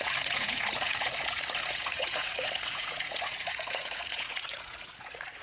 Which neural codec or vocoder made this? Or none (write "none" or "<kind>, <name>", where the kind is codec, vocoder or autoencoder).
vocoder, Vocos